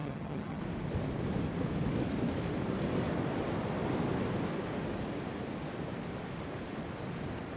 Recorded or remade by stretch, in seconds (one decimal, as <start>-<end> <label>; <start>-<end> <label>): 0.0-0.6 remade; 0.6-7.6 recorded